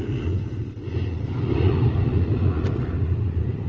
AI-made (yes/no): yes